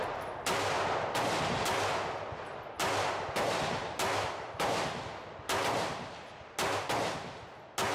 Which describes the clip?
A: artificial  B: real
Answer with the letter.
B